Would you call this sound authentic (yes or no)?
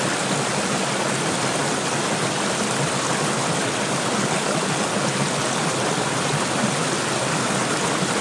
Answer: yes